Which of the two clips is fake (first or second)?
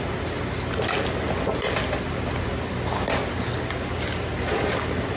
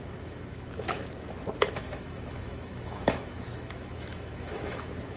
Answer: second